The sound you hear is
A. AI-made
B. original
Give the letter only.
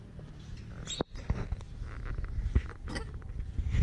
B